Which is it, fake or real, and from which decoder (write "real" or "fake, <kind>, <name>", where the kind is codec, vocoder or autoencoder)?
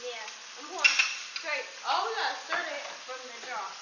real